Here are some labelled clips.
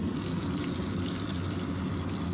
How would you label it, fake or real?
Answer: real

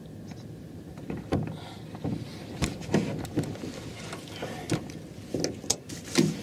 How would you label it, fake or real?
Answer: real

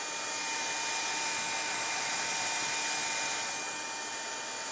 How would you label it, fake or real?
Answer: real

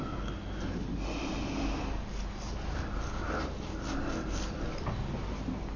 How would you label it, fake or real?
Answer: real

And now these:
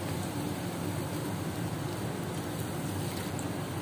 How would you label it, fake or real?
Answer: real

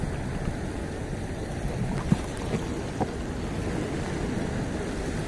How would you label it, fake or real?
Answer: real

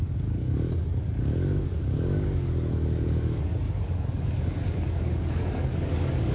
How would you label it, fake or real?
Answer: fake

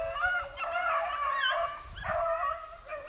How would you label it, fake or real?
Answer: real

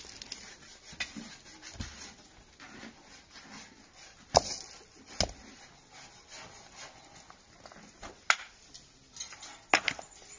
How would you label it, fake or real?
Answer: real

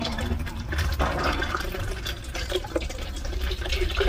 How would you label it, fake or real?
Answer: fake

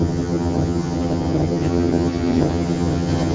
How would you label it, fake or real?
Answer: fake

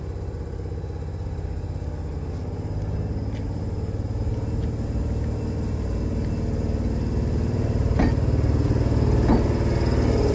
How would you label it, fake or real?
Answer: real